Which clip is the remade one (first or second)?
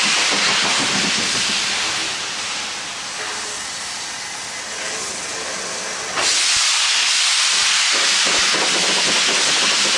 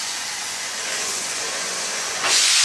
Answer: second